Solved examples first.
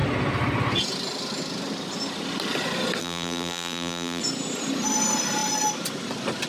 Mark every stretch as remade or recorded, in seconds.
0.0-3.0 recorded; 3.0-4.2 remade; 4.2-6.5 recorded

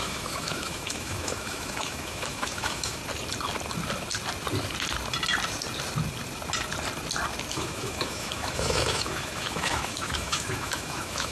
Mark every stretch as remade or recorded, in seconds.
0.0-3.0 remade; 3.0-7.5 recorded; 7.5-11.3 remade

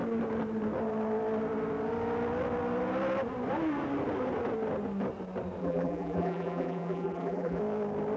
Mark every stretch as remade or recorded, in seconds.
0.0-5.6 recorded; 5.6-7.6 remade; 7.6-8.2 recorded